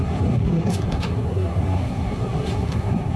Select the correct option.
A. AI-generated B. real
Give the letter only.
A